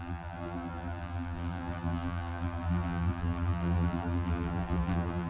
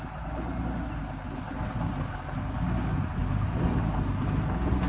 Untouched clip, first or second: second